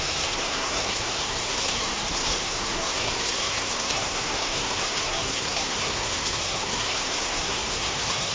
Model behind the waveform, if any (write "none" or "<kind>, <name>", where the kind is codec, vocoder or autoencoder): codec, SNAC